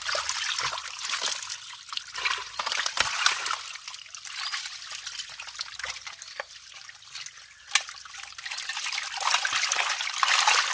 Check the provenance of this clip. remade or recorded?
recorded